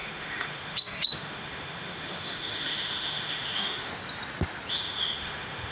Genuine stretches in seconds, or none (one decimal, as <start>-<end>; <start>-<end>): 3.9-4.7